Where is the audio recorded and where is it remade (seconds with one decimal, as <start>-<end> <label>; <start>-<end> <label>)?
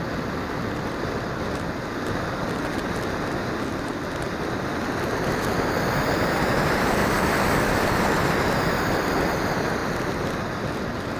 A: 0.0-11.2 recorded